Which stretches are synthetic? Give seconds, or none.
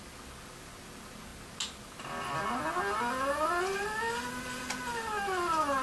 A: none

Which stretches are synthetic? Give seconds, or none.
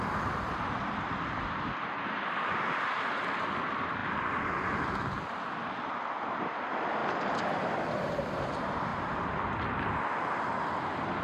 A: 0.0-8.9; 10.0-11.2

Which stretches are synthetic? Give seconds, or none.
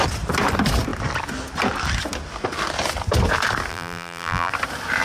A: 3.7-4.5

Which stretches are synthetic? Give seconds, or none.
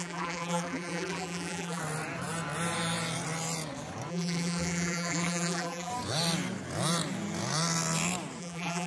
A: 0.0-1.8; 4.1-5.9; 8.4-8.9